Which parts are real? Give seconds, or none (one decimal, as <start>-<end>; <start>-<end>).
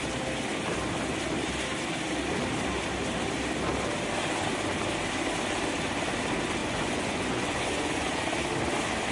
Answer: 0.0-6.6; 8.2-9.1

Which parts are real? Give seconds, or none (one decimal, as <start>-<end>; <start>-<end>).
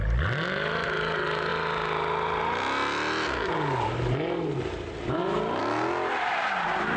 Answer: 0.0-7.0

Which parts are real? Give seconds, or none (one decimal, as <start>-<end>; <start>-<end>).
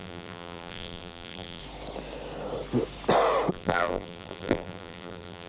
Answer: 1.6-3.5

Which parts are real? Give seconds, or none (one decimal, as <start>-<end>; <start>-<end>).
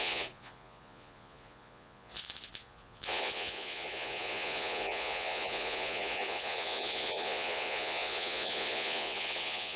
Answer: none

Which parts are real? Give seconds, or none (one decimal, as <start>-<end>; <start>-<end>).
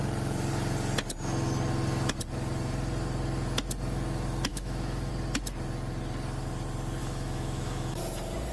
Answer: 0.0-4.5; 5.1-7.0; 8.0-8.5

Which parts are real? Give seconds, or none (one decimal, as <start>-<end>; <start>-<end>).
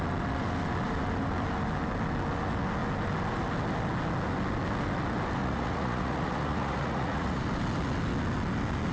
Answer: 0.0-5.4; 7.4-8.9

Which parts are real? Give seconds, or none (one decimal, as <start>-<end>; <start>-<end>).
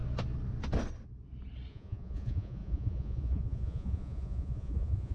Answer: 0.0-1.7